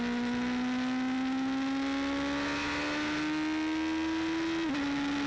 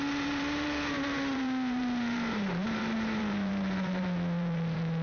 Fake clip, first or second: second